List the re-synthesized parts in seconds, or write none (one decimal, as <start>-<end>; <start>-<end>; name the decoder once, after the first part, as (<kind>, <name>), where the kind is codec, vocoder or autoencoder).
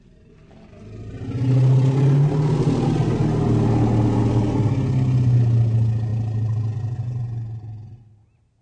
none